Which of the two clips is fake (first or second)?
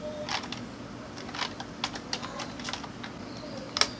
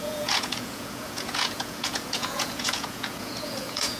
second